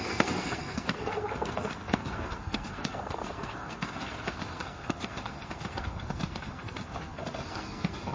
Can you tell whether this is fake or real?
fake